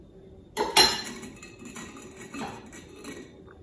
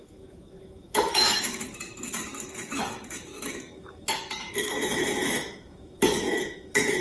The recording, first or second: first